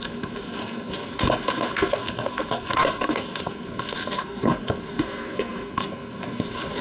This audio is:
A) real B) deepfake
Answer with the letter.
B